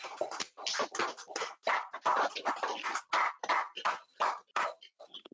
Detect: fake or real real